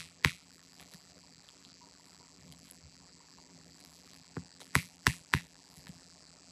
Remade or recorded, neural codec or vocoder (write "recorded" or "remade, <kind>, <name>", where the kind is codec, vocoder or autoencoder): remade, vocoder, BigVGAN v2